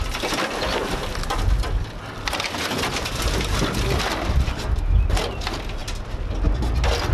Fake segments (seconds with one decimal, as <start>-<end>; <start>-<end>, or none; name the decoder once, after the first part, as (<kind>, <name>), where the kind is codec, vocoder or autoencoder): none